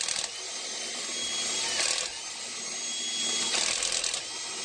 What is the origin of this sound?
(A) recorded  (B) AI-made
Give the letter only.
A